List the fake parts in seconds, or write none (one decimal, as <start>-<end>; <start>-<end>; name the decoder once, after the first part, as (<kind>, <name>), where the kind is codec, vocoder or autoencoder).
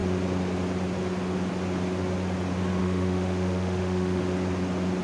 2.8-4.2 (autoencoder, DAC-VAE)